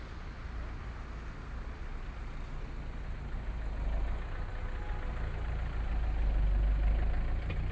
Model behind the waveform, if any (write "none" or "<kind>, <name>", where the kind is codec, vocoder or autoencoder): none